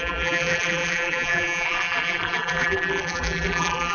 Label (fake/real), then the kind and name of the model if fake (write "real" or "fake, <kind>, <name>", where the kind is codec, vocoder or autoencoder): fake, vocoder, BigVGAN v2